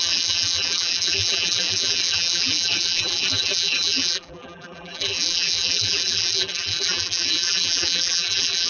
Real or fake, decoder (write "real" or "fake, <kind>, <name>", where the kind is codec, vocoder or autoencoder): fake, vocoder, BigVGAN v2